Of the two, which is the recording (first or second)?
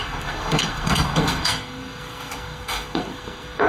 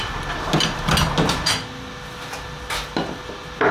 second